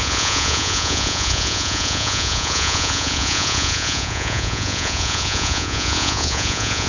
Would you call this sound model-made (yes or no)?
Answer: yes